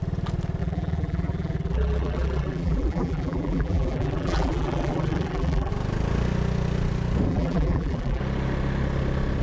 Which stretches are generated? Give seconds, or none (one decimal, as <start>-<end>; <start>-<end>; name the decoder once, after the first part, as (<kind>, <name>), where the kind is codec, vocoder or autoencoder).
0.6-5.7 (vocoder, BigVGAN v2); 7.3-8.2